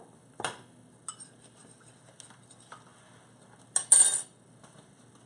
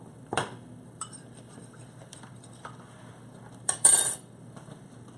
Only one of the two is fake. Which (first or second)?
second